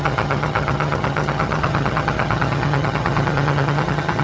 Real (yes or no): no